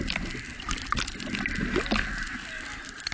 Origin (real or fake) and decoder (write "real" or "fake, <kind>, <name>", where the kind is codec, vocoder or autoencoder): real